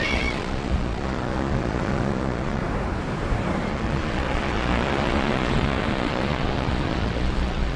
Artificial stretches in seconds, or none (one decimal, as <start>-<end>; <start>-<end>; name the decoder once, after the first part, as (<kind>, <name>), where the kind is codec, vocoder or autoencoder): 0.0-2.6 (vocoder, Vocos); 3.7-7.8